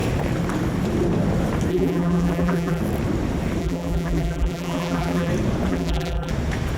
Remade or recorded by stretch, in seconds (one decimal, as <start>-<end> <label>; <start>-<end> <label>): 0.0-1.7 recorded; 1.7-2.8 remade; 2.8-3.6 recorded; 3.6-5.3 remade; 5.3-5.7 recorded; 5.7-6.3 remade; 6.3-6.8 recorded